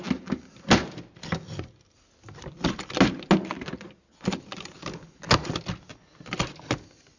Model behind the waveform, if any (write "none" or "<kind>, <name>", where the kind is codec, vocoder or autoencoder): none